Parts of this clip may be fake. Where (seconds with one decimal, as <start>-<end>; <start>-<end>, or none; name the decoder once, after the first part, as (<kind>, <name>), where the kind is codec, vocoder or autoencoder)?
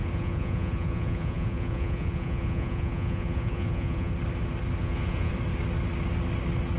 0.0-4.1 (vocoder, Vocos); 4.8-5.3